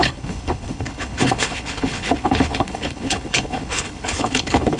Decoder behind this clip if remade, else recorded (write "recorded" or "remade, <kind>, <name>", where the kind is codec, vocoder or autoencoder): remade, codec, HILCodec